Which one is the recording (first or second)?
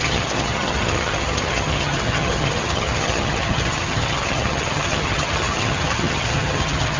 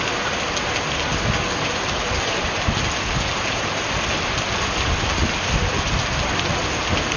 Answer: second